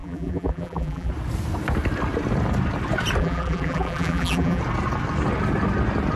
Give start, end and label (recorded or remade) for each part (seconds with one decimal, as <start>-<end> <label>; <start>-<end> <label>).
0.0-1.1 remade; 1.1-3.2 recorded; 3.2-4.6 remade; 4.6-6.2 recorded